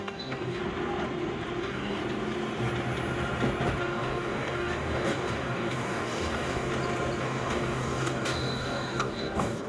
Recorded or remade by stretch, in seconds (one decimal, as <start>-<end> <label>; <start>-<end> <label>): 0.0-0.6 remade; 0.6-1.6 recorded; 1.6-2.0 remade; 2.0-3.8 recorded; 3.8-6.7 remade; 6.7-7.2 recorded; 7.2-9.7 remade